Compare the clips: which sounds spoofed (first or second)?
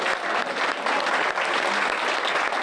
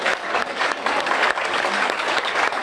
second